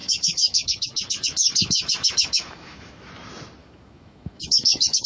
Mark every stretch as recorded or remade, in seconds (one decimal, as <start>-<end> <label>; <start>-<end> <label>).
0.0-3.1 remade; 3.1-3.6 recorded; 3.6-5.1 remade